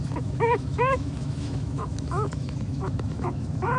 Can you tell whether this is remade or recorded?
remade